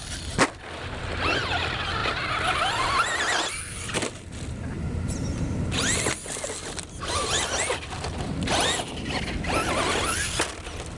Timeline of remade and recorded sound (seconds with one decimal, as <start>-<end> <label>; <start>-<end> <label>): 0.0-11.0 recorded